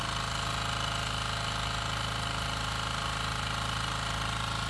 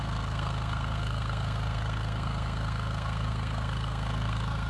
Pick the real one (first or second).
first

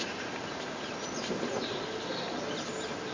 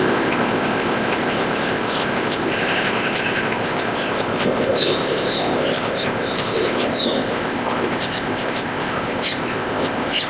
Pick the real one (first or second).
first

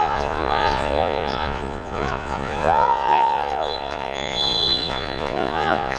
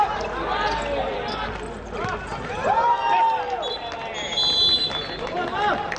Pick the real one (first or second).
second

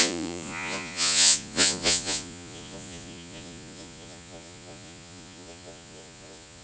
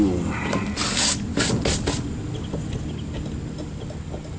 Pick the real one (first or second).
second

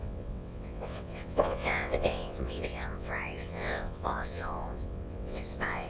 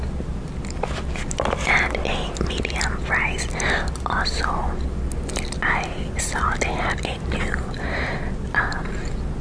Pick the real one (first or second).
second